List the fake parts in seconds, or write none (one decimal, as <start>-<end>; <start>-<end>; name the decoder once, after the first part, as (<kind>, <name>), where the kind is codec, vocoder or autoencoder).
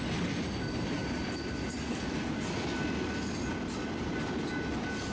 none